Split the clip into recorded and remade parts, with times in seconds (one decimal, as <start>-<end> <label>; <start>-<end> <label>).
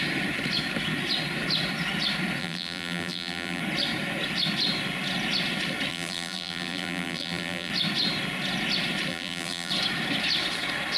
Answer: 0.0-2.4 recorded; 2.4-3.6 remade; 3.6-5.9 recorded; 5.9-7.7 remade; 7.7-9.1 recorded; 9.1-9.7 remade; 9.7-11.0 recorded